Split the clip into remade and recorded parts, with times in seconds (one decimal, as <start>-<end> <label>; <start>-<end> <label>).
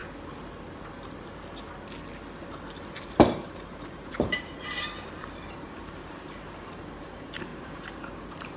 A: 0.0-3.1 recorded; 3.1-8.6 remade